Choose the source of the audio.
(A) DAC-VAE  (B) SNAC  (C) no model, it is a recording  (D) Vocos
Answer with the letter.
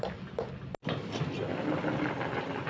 C